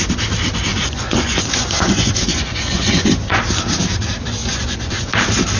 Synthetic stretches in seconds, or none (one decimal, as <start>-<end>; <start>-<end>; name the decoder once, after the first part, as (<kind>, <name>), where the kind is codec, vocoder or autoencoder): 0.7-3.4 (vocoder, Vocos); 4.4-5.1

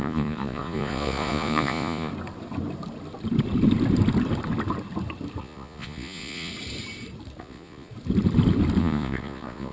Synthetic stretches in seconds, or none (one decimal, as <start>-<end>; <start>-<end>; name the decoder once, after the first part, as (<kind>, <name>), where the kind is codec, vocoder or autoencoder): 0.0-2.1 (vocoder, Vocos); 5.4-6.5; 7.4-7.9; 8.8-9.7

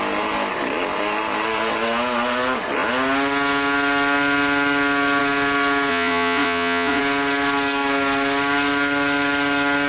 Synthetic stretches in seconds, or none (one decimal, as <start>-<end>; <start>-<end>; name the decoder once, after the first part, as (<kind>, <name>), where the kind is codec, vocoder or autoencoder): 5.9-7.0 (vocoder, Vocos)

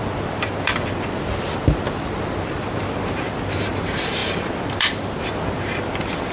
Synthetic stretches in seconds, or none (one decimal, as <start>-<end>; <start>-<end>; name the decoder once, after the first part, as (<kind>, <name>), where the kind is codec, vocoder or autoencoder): none

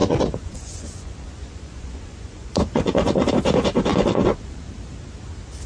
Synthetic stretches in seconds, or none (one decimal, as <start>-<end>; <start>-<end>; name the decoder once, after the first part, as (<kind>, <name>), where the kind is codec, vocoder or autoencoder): 0.0-3.3 (vocoder, Vocos); 3.9-4.6